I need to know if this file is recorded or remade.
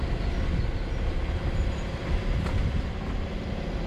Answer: recorded